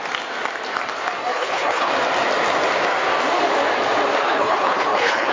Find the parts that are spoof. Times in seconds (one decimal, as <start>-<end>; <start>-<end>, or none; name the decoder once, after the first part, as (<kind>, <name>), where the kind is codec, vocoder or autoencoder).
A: 1.3-1.9 (codec, HILCodec); 4.2-5.3